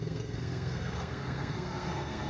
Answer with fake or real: fake